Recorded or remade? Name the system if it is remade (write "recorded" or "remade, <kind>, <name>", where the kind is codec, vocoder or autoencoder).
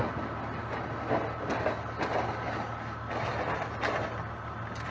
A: recorded